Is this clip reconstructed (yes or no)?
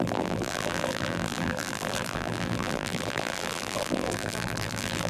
yes